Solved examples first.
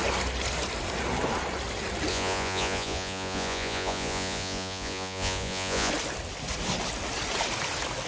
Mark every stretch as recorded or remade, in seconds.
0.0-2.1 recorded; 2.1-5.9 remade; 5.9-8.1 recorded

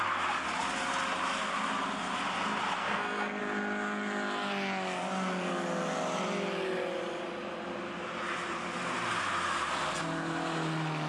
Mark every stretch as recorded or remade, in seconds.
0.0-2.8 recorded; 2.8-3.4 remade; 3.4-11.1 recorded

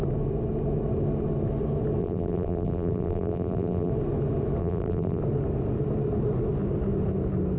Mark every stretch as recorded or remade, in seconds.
0.0-2.0 recorded; 2.0-3.9 remade; 3.9-4.6 recorded; 4.6-5.2 remade; 5.2-7.6 recorded

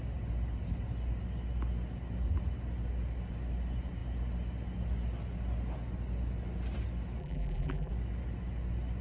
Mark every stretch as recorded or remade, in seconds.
0.0-7.2 recorded; 7.2-7.9 remade; 7.9-9.0 recorded